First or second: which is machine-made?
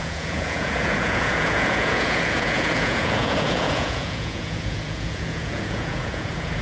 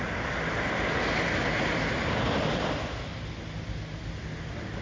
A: first